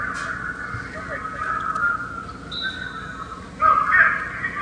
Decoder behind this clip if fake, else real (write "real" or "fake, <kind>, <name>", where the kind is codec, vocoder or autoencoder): real